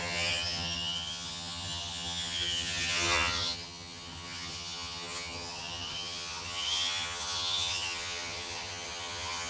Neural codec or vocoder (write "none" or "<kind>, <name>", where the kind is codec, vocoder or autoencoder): vocoder, HiFi-GAN